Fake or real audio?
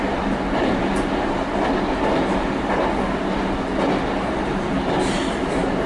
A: real